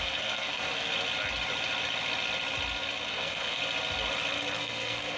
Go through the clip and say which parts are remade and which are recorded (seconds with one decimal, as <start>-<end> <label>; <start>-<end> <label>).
0.0-0.9 remade; 0.9-3.1 recorded; 3.1-3.6 remade; 3.6-4.6 recorded; 4.6-5.2 remade